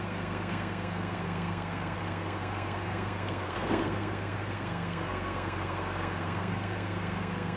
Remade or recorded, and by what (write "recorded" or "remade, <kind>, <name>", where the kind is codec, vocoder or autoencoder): remade, codec, SNAC